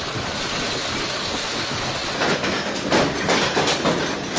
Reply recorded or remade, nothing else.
recorded